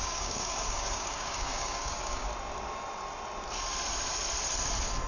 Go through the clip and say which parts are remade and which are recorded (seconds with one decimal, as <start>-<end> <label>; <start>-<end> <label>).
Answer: 0.0-2.3 remade; 2.3-5.1 recorded